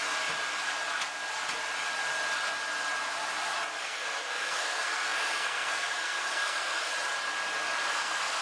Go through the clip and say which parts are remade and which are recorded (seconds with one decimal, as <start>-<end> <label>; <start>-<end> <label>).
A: 0.0-3.8 recorded; 3.8-6.9 remade; 6.9-7.9 recorded; 7.9-8.4 remade